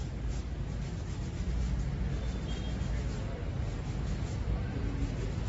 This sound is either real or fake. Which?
real